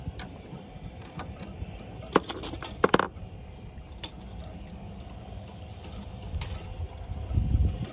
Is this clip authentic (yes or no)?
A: yes